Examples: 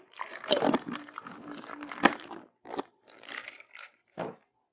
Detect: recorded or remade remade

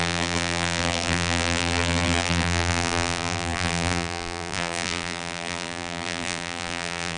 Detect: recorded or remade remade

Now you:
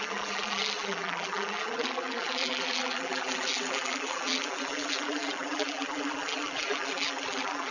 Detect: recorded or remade remade